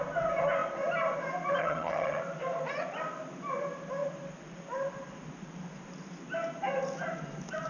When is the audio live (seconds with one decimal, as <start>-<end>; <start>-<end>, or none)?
0.0-1.6; 2.2-7.7